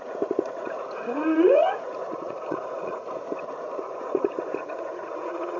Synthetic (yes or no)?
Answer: yes